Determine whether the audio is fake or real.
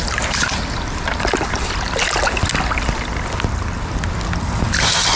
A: real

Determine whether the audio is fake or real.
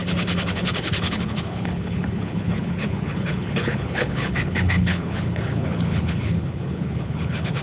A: fake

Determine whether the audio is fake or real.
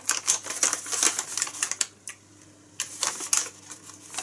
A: real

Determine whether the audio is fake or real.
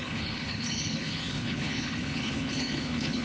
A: fake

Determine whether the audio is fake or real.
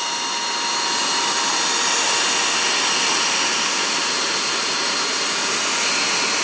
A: real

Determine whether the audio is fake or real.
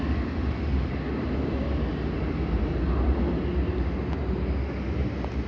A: real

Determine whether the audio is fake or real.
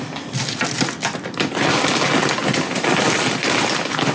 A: real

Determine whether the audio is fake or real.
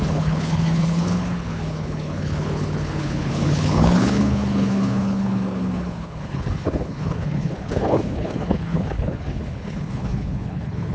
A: fake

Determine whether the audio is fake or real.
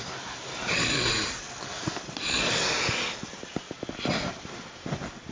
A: real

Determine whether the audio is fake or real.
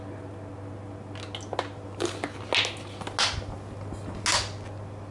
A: real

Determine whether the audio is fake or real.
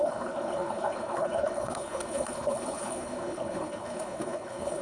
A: fake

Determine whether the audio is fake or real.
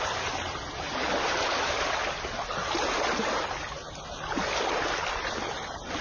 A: real